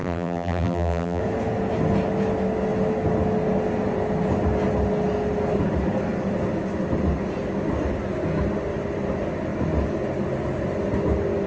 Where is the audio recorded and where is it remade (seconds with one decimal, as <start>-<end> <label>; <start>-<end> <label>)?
0.0-1.2 remade; 1.2-11.5 recorded